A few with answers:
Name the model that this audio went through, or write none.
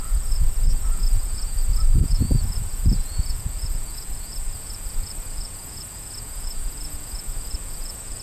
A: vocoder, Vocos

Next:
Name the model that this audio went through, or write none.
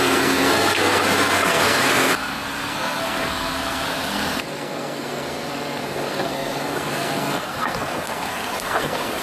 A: codec, SNAC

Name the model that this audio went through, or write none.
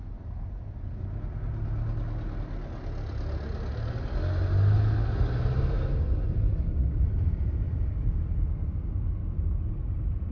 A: none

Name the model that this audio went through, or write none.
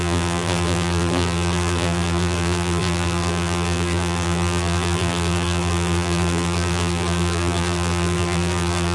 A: vocoder, BigVGAN v2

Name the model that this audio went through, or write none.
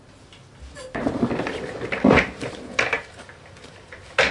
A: none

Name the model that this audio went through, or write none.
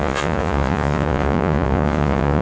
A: vocoder, Vocos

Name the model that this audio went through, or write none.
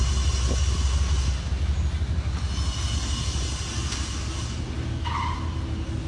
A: none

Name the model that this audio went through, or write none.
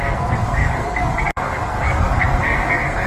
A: codec, SNAC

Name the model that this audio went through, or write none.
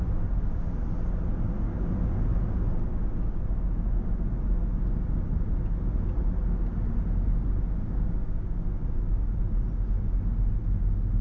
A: none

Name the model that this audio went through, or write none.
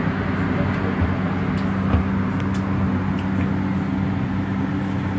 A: none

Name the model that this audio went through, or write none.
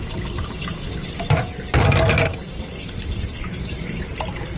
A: none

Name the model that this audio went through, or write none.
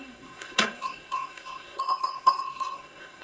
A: codec, SNAC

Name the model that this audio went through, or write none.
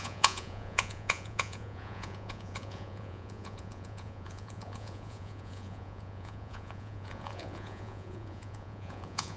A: vocoder, Vocos